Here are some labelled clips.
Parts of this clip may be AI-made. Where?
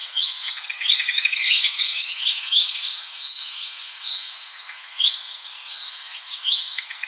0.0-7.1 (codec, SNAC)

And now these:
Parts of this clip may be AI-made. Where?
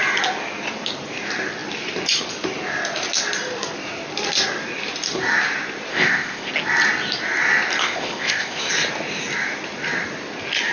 5.9-6.5 (codec, ZipCodec); 7.8-8.7